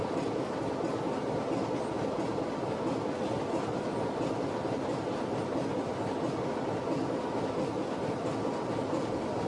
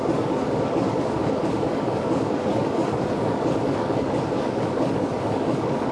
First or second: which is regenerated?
second